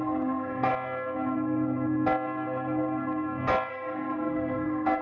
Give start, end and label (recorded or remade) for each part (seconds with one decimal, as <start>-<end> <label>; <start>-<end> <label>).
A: 0.0-0.7 remade; 0.7-3.7 recorded; 3.7-5.0 remade